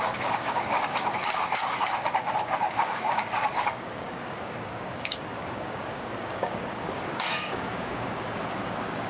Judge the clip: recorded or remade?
remade